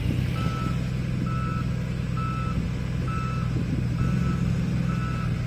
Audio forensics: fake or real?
real